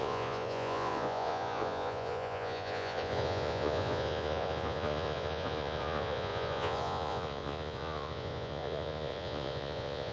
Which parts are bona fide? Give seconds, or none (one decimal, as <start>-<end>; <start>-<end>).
none